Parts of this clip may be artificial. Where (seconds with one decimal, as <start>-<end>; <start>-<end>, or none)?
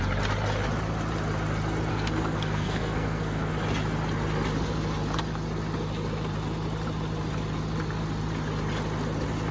1.9-3.5